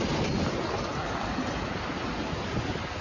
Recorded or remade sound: recorded